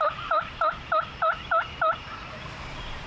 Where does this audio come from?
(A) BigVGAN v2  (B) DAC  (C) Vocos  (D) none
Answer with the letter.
A